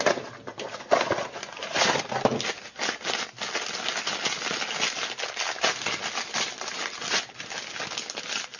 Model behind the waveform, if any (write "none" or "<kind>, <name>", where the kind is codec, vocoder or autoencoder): none